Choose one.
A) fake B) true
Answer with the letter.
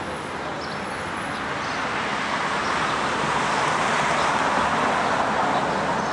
B